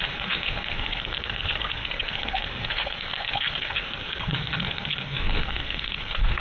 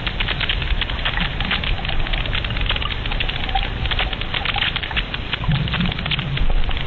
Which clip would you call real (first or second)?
second